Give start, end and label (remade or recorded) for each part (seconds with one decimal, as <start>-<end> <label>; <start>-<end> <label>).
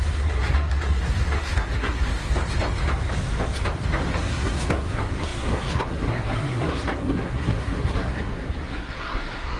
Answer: 0.0-2.3 remade; 2.3-4.2 recorded; 4.2-9.6 remade